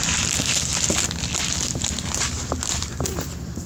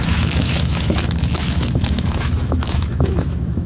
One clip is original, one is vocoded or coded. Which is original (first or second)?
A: first